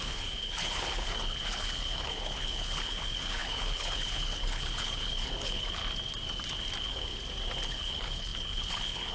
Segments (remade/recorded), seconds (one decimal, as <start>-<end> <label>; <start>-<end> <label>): 0.0-5.8 remade; 5.8-6.8 recorded; 6.8-7.2 remade; 7.2-7.7 recorded; 7.7-9.1 remade